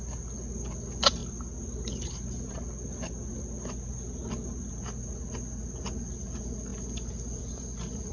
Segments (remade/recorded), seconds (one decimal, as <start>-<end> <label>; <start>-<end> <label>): 0.0-8.1 recorded